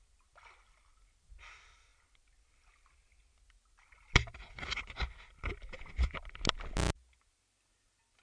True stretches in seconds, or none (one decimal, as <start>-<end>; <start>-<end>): 0.0-8.2